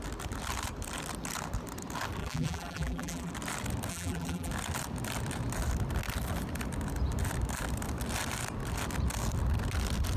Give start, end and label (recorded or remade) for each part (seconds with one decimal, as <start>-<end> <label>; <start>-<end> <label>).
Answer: 0.0-2.2 recorded; 2.2-3.3 remade; 3.3-3.9 recorded; 3.9-4.5 remade; 4.5-10.2 recorded